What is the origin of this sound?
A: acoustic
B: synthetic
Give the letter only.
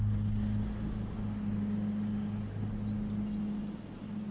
A